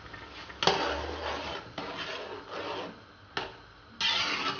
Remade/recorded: recorded